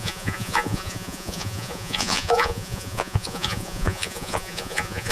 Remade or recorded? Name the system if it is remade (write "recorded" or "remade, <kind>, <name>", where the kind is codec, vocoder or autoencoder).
remade, vocoder, Vocos